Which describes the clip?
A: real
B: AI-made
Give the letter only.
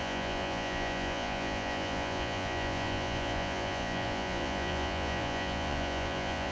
B